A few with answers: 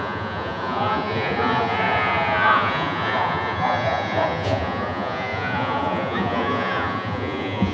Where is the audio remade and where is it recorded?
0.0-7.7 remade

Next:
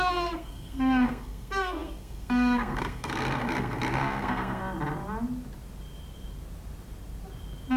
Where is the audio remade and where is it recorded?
0.0-4.6 remade; 4.6-7.8 recorded

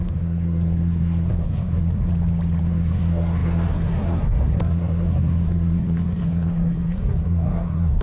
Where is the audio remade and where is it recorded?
0.0-2.1 remade; 2.1-2.6 recorded; 2.6-8.0 remade